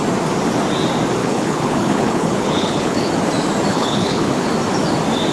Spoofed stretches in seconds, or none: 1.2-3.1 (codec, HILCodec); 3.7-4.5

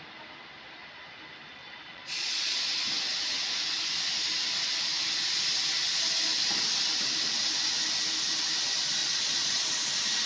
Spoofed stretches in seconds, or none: 1.6-2.6 (vocoder, Vocos); 9.0-9.9

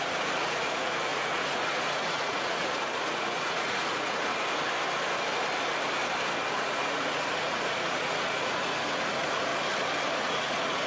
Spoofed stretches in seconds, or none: 0.0-4.3 (vocoder, Vocos); 6.5-9.5; 10.2-10.9

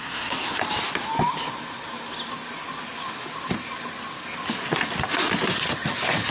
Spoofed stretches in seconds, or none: 0.0-0.6 (codec, SNAC)

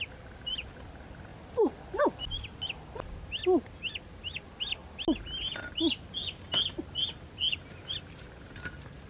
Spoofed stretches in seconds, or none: none

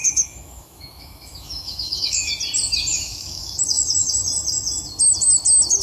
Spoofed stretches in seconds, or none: 0.0-2.3 (autoencoder, DAC-VAE); 2.9-4.1

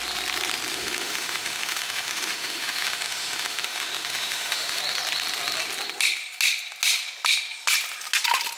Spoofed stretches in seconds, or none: 0.7-4.8 (autoencoder, DAC-VAE)